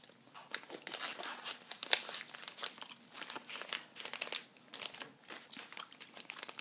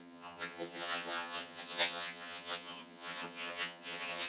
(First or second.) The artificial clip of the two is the second